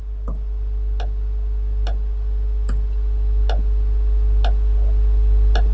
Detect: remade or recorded recorded